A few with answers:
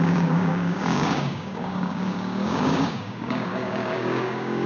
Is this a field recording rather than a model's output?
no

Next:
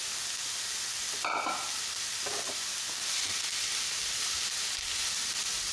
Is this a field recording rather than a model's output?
yes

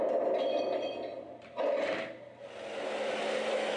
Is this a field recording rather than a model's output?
yes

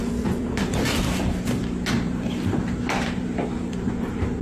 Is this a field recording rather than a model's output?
no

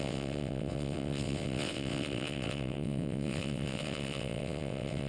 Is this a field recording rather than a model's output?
no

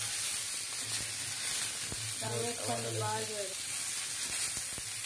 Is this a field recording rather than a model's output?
yes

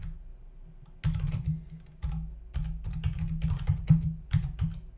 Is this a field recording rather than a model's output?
yes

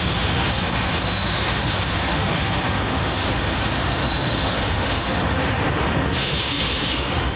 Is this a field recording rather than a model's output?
no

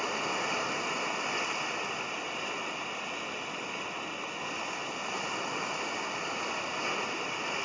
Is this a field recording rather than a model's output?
yes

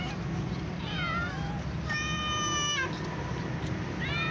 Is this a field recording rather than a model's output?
yes